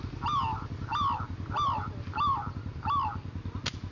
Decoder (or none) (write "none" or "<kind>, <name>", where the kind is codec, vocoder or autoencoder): none